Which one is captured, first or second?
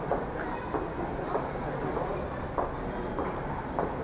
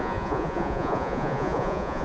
first